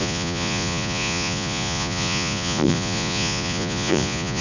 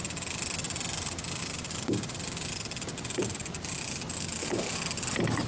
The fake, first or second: first